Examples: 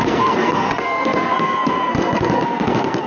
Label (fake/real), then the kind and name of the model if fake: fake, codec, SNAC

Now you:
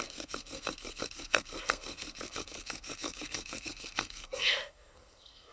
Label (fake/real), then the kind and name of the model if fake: fake, codec, SNAC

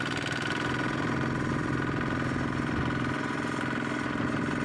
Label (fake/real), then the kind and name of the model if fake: fake, vocoder, BigVGAN v2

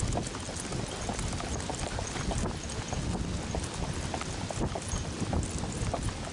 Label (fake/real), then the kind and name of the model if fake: real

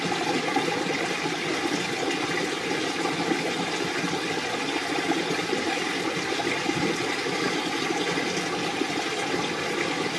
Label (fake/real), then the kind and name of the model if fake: real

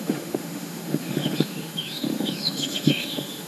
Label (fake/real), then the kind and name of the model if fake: fake, autoencoder, DAC-VAE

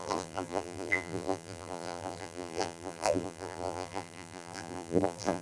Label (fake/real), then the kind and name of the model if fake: fake, vocoder, BigVGAN v2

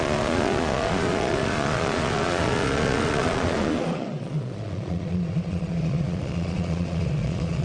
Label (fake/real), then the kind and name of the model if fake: fake, vocoder, Vocos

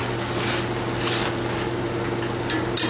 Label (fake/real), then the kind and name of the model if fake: real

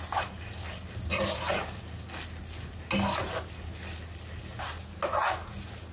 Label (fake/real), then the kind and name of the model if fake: real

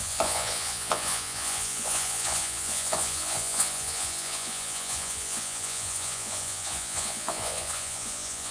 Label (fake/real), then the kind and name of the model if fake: fake, vocoder, Vocos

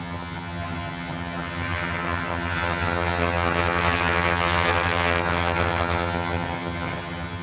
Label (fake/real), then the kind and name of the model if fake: fake, vocoder, HiFi-GAN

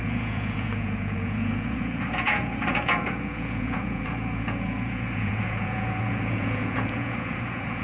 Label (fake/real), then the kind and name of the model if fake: fake, vocoder, Vocos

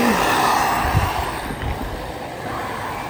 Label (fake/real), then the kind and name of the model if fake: real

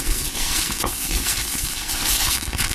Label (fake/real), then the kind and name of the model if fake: fake, codec, SNAC